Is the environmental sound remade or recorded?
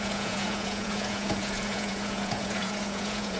remade